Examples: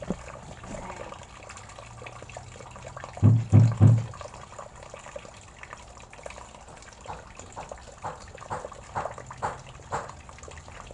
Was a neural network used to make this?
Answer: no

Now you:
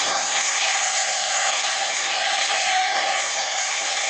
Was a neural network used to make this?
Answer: yes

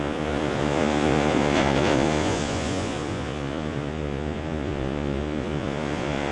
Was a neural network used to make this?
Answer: yes